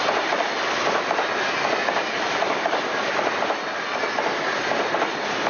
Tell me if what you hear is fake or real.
real